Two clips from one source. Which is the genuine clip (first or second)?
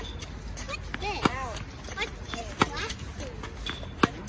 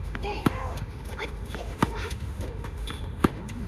first